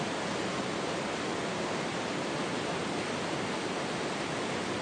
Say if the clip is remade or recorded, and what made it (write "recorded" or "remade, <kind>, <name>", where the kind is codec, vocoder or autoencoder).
recorded